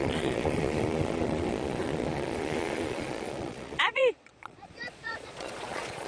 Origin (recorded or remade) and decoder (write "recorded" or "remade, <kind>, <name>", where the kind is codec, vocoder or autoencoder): remade, vocoder, Vocos